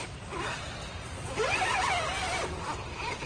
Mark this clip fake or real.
real